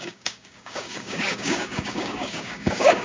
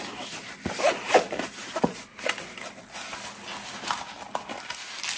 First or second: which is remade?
first